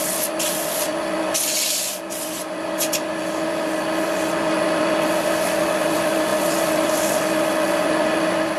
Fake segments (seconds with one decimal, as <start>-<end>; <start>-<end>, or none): none